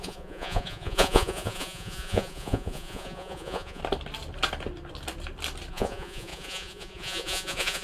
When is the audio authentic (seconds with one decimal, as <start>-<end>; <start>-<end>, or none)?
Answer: 3.8-5.7